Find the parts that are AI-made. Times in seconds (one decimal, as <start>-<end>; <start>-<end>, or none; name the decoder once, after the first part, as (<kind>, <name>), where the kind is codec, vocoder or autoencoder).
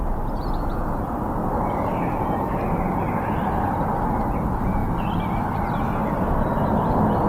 1.4-3.8 (vocoder, BigVGAN v2)